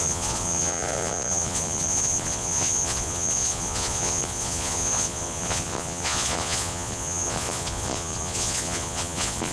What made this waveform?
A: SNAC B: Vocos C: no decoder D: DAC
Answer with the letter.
B